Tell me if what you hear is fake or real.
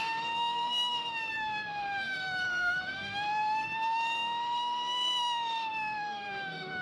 fake